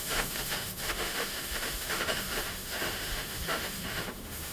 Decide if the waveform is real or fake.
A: fake